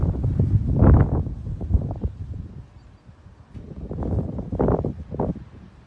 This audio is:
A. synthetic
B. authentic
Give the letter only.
B